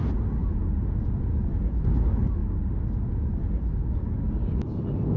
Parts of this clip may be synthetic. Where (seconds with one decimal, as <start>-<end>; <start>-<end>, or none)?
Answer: 0.4-1.4